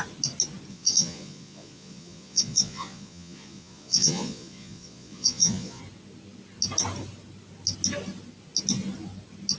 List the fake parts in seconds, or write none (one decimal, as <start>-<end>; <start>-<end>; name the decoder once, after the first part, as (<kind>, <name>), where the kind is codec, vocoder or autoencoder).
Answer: 0.7-5.8 (vocoder, Vocos)